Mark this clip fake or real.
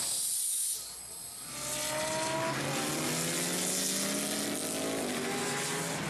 real